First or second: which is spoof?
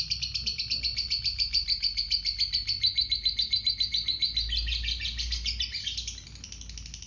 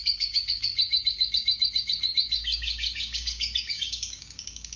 second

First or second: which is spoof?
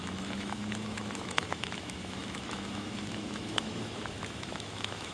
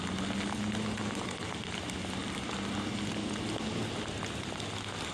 first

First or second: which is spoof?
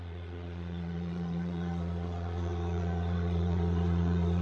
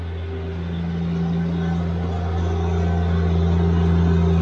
first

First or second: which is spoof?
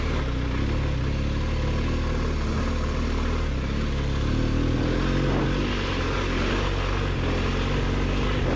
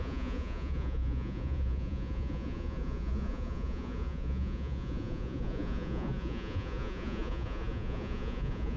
second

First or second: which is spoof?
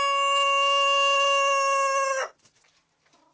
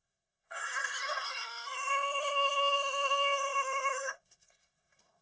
second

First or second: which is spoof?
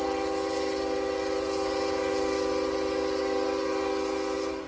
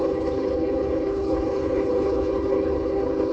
second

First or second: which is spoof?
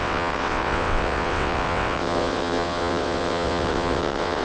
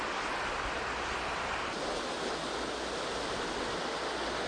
first